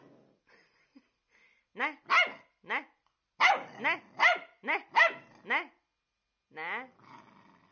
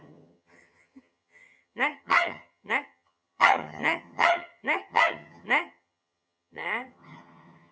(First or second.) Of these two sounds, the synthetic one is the second